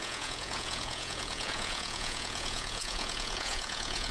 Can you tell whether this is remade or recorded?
remade